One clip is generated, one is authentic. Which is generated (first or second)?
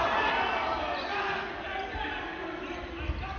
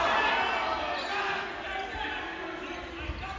first